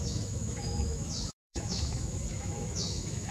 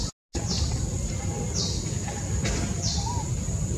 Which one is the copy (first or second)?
first